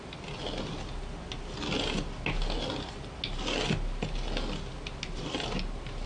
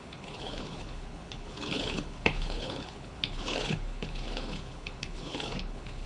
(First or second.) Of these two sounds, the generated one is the second